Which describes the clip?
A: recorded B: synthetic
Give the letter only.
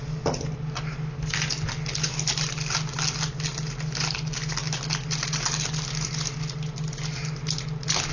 A